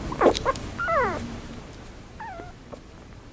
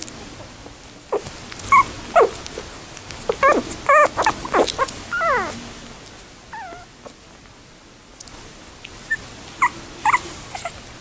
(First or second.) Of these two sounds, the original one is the second